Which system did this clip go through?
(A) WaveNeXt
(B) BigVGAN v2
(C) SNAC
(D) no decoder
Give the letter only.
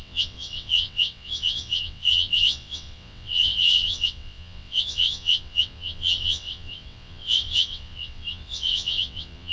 A